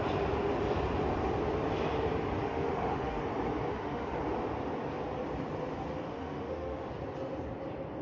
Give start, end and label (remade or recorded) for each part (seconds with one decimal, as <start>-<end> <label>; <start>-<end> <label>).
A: 0.0-2.4 recorded; 2.4-3.2 remade; 3.2-3.7 recorded; 3.7-4.2 remade; 4.2-6.1 recorded; 6.1-6.9 remade; 6.9-8.0 recorded